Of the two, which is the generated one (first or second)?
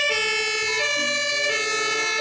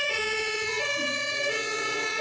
second